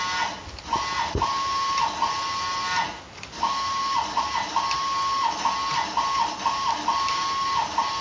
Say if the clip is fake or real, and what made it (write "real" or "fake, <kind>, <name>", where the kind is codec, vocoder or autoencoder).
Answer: real